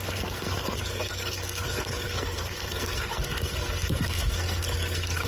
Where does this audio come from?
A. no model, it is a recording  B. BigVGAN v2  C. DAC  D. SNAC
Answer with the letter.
D